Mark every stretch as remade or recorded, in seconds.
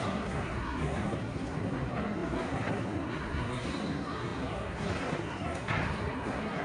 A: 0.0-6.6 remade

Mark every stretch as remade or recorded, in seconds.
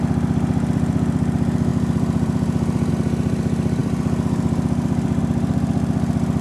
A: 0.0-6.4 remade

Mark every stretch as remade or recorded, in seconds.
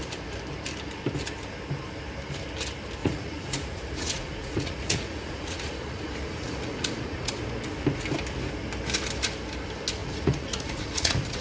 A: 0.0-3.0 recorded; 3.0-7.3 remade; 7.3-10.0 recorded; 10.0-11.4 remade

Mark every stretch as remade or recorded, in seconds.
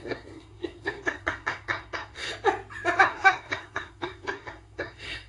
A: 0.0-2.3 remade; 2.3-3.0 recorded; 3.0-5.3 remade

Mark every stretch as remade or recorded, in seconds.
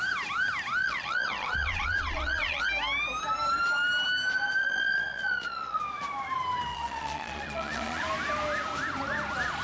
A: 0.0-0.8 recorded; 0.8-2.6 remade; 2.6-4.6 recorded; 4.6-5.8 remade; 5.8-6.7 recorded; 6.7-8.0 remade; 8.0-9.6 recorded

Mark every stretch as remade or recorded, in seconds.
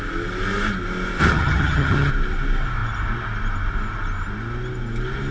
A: 0.0-1.2 recorded; 1.2-2.1 remade; 2.1-5.3 recorded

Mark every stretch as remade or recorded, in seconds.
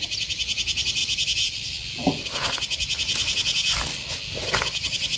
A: 0.0-5.2 recorded